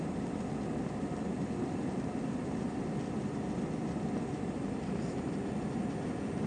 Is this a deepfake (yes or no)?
no